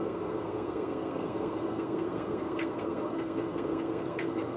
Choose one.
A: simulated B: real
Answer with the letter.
A